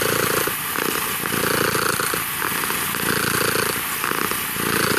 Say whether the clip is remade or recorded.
recorded